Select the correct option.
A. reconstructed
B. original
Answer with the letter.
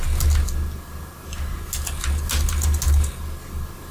B